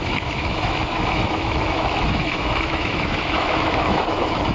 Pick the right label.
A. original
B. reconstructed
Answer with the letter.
B